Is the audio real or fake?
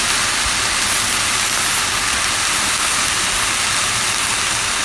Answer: real